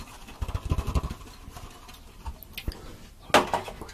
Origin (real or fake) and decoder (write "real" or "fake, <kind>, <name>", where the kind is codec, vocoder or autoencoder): real